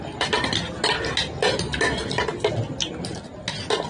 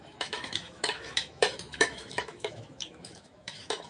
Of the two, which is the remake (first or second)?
second